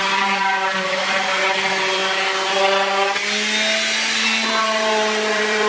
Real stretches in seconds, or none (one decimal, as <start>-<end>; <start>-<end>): 2.0-4.6